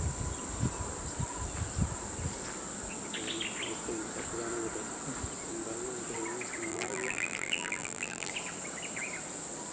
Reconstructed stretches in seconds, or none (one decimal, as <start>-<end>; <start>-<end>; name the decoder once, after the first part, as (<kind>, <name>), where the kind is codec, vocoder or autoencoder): 6.7-8.3 (vocoder, BigVGAN v2)